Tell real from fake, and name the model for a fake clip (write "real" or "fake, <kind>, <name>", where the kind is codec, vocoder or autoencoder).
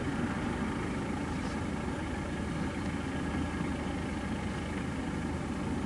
real